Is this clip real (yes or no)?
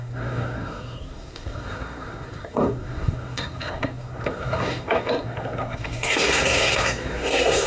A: no